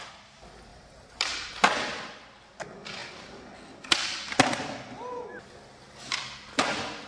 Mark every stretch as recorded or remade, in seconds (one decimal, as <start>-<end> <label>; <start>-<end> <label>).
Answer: 0.0-0.7 recorded; 0.7-1.5 remade; 1.5-7.1 recorded